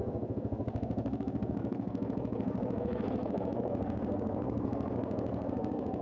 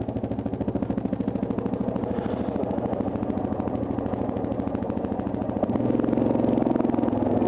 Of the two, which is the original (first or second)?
second